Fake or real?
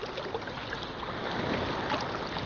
real